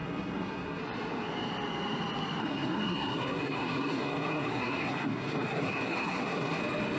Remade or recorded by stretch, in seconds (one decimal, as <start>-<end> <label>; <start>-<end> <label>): 0.0-0.8 remade; 0.8-2.4 recorded; 2.4-6.6 remade; 6.6-7.0 recorded